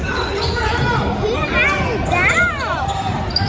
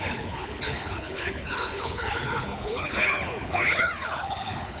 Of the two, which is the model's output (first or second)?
second